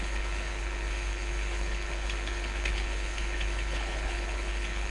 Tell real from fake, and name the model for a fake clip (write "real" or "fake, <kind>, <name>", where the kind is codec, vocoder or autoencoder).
fake, codec, HILCodec